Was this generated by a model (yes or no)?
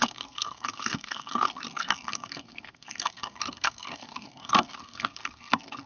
yes